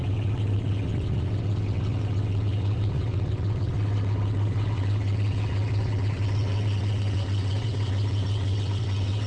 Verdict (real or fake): fake